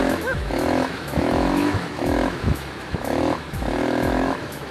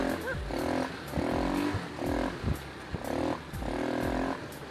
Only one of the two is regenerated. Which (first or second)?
first